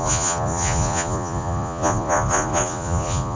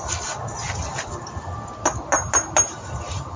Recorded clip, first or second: second